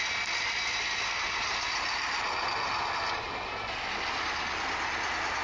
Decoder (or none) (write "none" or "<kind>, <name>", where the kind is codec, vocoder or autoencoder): none